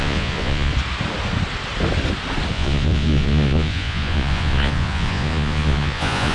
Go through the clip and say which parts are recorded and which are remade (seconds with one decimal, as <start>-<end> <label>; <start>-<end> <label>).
0.0-0.7 remade; 0.7-2.5 recorded; 2.5-6.3 remade